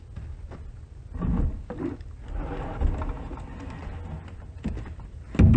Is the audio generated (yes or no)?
no